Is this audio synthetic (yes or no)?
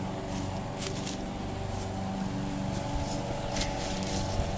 no